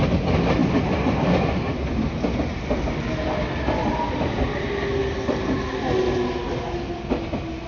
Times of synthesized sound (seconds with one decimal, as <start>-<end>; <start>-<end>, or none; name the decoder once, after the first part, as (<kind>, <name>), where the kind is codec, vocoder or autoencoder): none